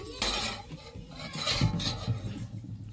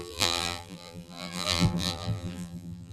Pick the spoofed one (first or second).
second